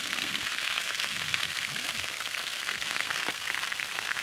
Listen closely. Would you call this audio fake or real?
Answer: fake